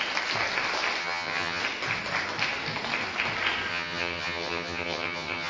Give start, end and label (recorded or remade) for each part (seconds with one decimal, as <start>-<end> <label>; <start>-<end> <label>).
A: 0.0-1.0 recorded; 1.0-1.6 remade; 1.6-3.7 recorded; 3.7-5.5 remade